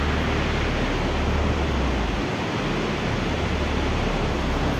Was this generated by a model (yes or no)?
no